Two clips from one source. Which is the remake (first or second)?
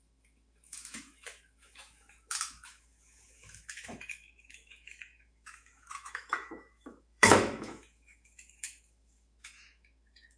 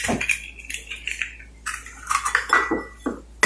first